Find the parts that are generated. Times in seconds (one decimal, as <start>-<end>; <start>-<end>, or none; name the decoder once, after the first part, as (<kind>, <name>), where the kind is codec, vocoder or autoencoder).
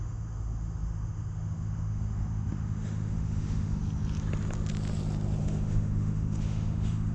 0.0-3.8 (autoencoder, DAC-VAE); 5.4-7.1